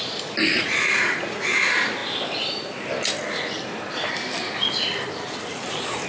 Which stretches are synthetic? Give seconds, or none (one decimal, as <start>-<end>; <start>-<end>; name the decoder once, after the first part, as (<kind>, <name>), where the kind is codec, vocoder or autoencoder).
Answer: 0.5-1.6 (vocoder, Vocos)